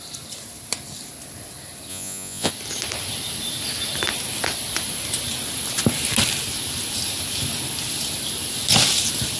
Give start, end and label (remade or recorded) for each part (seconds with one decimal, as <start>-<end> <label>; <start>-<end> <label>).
0.0-1.9 recorded; 1.9-2.5 remade; 2.5-9.4 recorded